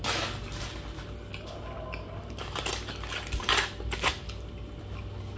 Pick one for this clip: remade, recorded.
recorded